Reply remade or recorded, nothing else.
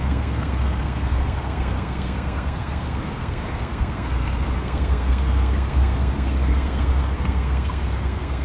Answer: remade